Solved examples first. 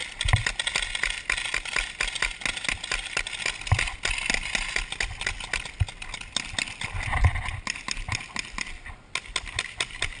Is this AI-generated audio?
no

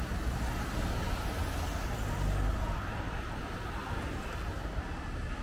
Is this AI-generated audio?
no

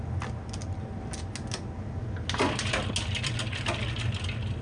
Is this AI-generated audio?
no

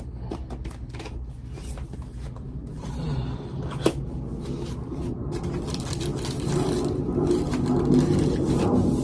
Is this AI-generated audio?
no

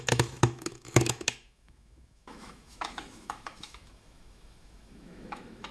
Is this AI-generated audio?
yes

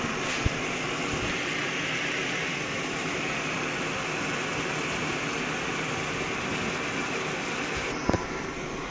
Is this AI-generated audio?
no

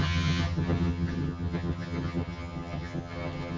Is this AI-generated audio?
yes